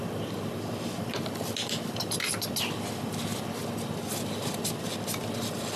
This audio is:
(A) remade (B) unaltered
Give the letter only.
B